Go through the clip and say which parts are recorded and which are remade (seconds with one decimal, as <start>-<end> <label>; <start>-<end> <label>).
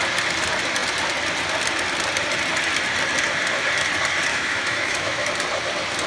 0.0-4.3 recorded; 4.3-5.3 remade; 5.3-6.1 recorded